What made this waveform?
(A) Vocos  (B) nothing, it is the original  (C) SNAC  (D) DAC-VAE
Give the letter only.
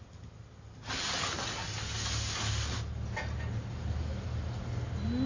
B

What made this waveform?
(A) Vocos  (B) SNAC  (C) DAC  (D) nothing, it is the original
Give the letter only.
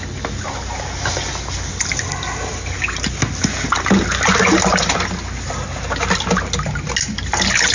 D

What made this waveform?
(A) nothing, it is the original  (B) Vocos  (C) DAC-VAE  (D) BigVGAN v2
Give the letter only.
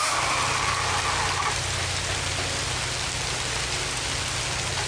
A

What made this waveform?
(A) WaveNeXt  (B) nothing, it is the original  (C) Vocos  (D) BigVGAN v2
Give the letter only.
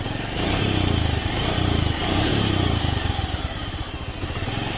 D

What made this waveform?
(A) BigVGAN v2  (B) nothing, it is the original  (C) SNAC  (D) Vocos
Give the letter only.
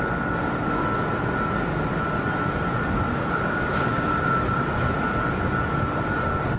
B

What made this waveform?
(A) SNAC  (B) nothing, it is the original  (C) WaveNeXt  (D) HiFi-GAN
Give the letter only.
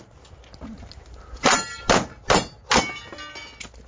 B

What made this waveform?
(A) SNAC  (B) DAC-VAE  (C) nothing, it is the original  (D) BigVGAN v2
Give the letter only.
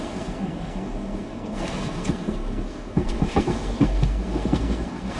A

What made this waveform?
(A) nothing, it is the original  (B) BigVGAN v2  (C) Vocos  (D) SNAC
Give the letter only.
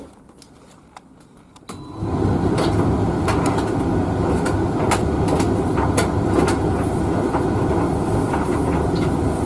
A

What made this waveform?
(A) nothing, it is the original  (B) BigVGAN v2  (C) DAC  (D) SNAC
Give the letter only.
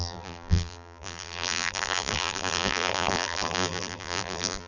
B